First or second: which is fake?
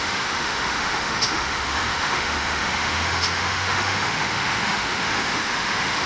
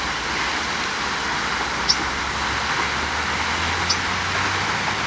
first